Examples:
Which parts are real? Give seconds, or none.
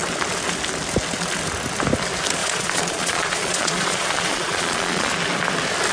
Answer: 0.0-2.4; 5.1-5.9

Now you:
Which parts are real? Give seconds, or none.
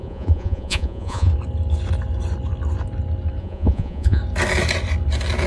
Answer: 1.3-3.4; 4.2-5.5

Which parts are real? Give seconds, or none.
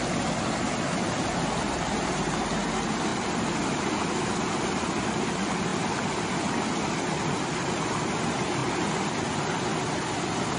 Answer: 0.0-10.6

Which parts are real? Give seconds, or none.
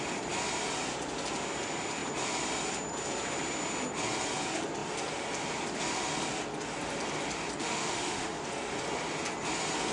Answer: 0.0-7.6; 8.4-9.9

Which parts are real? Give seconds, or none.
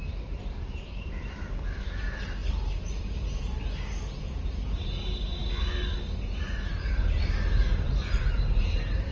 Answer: 5.4-6.2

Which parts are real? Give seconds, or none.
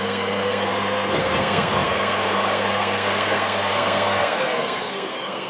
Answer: none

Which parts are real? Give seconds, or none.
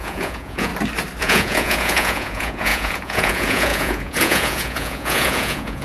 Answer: 0.7-1.2